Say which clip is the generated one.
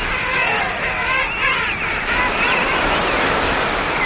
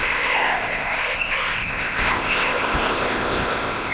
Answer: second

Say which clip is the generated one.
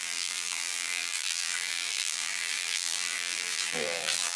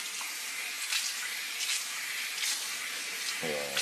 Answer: first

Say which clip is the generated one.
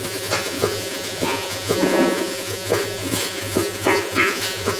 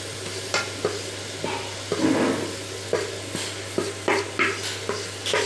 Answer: first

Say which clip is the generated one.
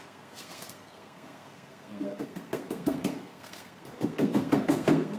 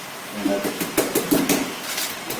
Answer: first